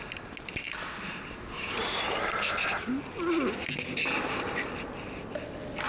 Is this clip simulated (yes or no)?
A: no